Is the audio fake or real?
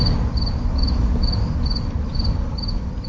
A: real